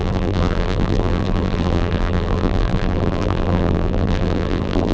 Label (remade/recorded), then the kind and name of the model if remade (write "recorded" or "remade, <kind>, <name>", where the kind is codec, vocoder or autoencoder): remade, vocoder, BigVGAN v2